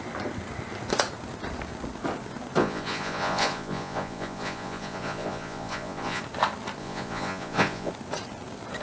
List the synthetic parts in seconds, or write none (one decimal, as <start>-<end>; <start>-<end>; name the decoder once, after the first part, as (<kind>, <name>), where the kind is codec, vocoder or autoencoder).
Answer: 2.6-6.2 (vocoder, Vocos); 6.8-7.9